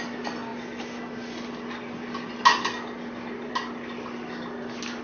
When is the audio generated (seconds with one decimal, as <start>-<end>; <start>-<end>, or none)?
none